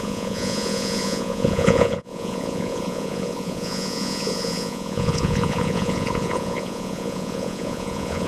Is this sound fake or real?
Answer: fake